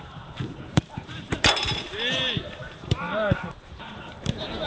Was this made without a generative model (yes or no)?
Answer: no